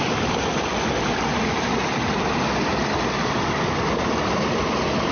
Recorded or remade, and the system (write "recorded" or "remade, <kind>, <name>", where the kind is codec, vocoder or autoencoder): recorded